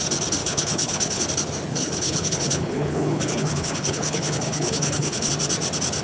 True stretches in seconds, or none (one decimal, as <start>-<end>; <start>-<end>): 0.0-0.4; 1.2-1.7; 5.3-6.0